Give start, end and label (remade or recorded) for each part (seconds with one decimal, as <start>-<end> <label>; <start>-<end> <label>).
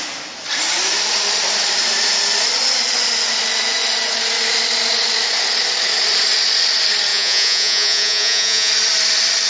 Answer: 0.0-7.1 recorded; 7.1-8.7 remade; 8.7-9.5 recorded